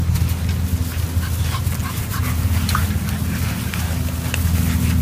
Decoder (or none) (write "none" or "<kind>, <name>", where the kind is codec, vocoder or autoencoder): none